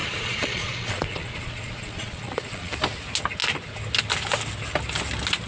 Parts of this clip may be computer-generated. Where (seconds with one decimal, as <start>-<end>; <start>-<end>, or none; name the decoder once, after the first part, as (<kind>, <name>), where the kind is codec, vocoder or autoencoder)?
0.0-2.7 (vocoder, Vocos)

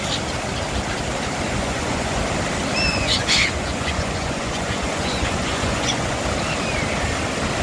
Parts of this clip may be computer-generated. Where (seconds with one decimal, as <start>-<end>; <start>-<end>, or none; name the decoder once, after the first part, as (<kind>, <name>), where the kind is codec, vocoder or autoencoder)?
1.6-2.2 (vocoder, Vocos); 2.9-6.2

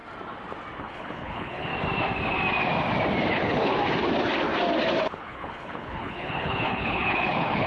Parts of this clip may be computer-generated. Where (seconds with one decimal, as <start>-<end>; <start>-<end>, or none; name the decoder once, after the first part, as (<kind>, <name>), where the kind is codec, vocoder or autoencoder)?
0.8-1.7 (codec, HILCodec); 3.3-3.7; 5.0-7.7

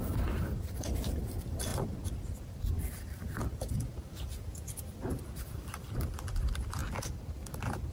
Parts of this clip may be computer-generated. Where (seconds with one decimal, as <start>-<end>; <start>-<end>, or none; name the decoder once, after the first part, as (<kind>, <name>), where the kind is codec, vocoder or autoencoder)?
0.0-4.5 (vocoder, BigVGAN v2); 5.1-6.8

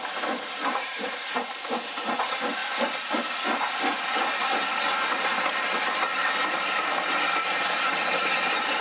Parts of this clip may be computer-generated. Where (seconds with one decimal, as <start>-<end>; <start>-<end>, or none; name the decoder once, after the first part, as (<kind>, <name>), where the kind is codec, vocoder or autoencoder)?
none

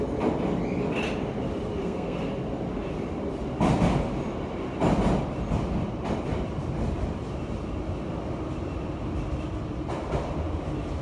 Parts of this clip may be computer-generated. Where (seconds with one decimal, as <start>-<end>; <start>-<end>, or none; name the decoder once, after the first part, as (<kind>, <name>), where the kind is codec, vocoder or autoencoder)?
1.8-2.3 (codec, SNAC)